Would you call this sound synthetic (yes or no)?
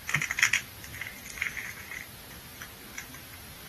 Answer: yes